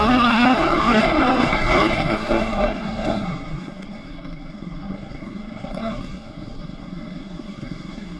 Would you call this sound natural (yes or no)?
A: no